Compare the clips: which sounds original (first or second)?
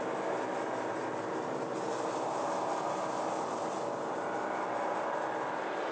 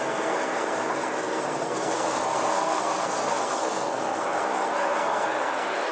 first